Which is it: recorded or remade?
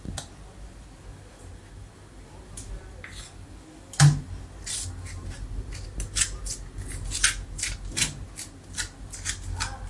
recorded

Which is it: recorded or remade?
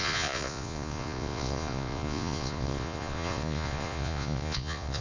remade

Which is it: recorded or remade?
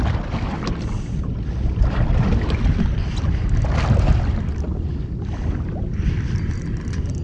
recorded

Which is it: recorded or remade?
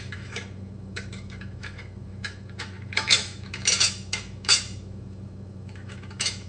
remade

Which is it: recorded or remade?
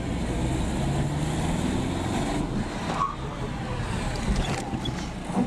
recorded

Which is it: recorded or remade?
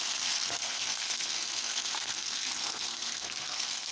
remade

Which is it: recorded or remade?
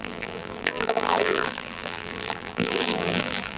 remade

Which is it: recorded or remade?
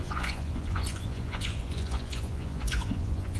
remade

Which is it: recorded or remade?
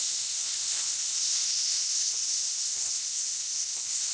remade